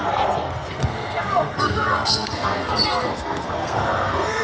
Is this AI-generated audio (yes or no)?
yes